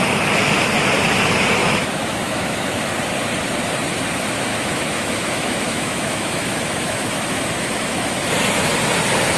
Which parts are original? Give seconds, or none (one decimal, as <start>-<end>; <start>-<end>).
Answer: 0.0-1.6; 2.9-4.5; 8.3-9.4